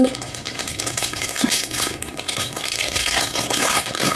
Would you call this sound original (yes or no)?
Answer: no